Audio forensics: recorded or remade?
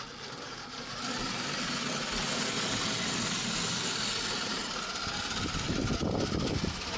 recorded